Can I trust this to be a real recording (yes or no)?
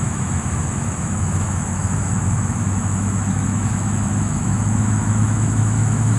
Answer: no